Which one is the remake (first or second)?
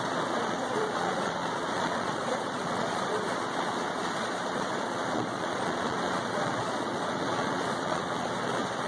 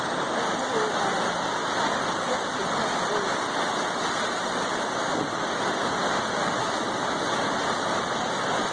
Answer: first